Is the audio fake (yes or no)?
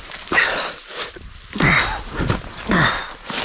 no